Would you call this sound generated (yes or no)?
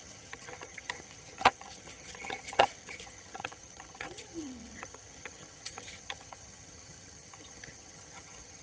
yes